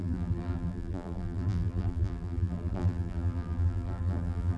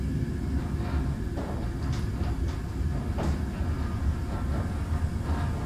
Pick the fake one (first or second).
first